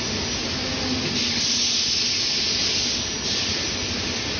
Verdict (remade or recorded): recorded